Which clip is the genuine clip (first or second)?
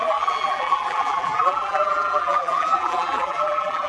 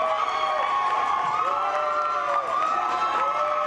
second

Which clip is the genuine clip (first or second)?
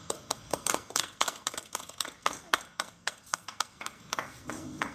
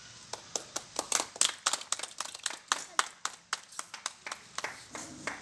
second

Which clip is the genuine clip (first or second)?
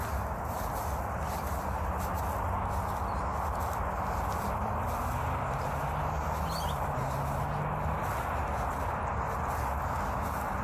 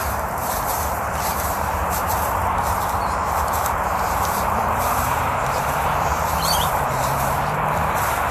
first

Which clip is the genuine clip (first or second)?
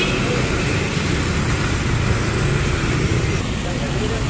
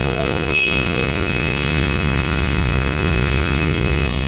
first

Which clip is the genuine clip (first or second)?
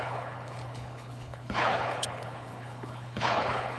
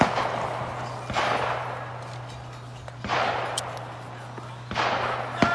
second